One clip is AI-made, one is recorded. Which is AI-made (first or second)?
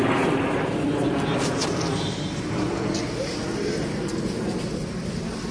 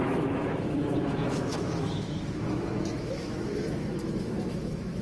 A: second